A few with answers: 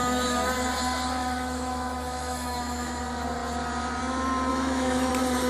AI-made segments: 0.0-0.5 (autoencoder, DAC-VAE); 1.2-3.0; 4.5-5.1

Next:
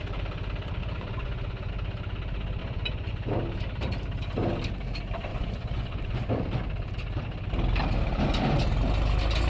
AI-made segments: 0.8-1.7 (vocoder, Vocos); 2.6-3.3; 5.3-6.3

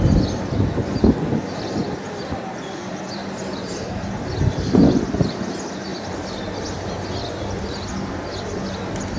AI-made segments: 3.2-4.1 (vocoder, BigVGAN v2)